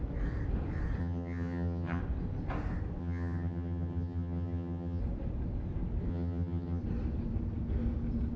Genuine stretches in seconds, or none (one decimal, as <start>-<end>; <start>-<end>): 0.0-1.0; 2.0-3.0; 5.0-6.1; 6.8-8.4